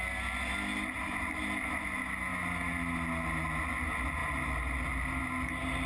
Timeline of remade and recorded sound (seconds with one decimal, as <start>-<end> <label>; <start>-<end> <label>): 0.0-5.9 recorded